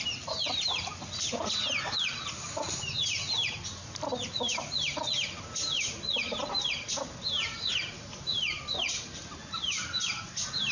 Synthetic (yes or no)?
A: no